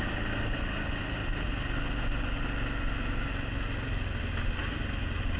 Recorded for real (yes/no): yes